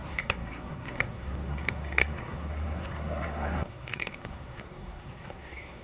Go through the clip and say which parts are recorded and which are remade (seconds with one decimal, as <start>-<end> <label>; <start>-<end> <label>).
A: 0.0-5.8 remade

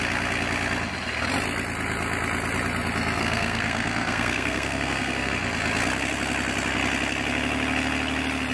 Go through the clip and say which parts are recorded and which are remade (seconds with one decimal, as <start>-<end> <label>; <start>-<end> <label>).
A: 0.0-3.2 recorded; 3.2-5.3 remade; 5.3-8.5 recorded

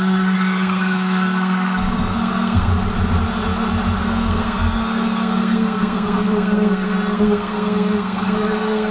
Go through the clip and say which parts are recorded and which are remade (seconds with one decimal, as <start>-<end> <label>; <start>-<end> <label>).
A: 0.0-2.7 remade; 2.7-4.0 recorded; 4.0-8.9 remade

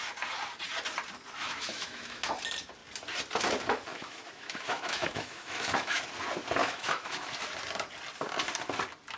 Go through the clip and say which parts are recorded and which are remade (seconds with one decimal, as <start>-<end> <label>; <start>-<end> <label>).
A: 0.0-1.4 recorded; 1.4-2.3 remade; 2.3-3.9 recorded; 3.9-6.0 remade; 6.0-6.6 recorded; 6.6-7.3 remade; 7.3-9.2 recorded